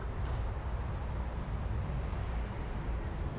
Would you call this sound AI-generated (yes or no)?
no